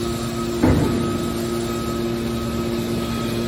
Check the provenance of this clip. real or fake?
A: real